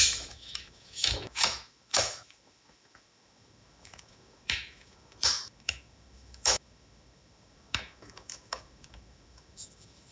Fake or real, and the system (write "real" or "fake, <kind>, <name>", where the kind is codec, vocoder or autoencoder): fake, autoencoder, DAC-VAE